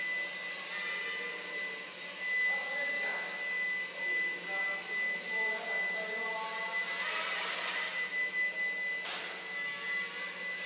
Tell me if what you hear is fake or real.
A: real